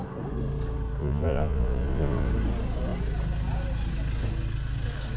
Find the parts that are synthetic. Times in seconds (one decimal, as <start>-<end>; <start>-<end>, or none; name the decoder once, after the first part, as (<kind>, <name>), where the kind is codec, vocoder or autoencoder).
1.0-2.3 (vocoder, Vocos)